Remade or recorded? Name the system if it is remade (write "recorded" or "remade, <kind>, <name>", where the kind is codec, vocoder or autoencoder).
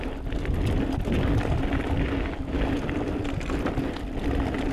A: recorded